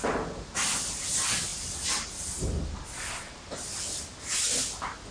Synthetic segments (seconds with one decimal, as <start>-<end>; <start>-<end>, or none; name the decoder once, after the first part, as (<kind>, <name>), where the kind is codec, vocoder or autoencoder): none